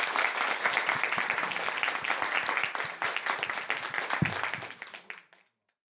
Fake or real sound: real